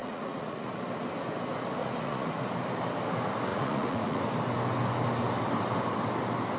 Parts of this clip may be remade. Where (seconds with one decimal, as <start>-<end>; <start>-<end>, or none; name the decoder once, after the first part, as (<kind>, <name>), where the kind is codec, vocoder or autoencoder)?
0.0-0.7 (vocoder, Vocos); 1.8-2.3; 3.5-4.2